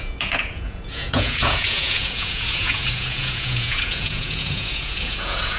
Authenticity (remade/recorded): remade